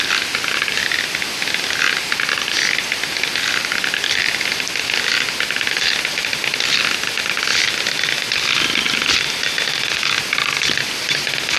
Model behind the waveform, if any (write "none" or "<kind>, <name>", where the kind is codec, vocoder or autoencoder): none